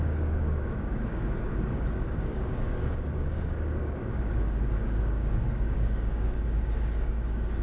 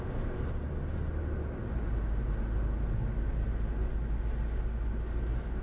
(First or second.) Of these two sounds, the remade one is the first